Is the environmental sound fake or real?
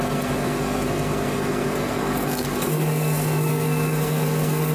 fake